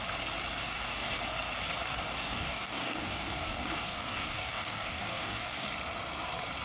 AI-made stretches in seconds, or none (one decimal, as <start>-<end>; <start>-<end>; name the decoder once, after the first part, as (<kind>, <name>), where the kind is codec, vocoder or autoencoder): 0.6-1.2 (codec, DAC); 2.1-5.7